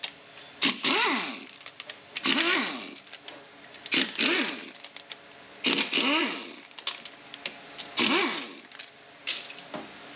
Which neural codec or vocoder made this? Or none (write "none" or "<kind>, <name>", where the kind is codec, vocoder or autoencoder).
none